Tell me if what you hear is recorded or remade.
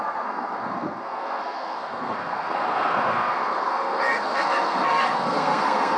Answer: remade